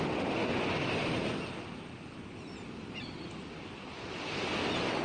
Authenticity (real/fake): real